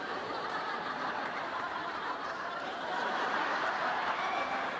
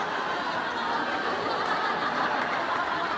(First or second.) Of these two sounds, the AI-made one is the first